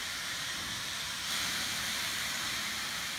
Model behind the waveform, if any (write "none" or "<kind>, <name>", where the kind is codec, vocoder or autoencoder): vocoder, BigVGAN v2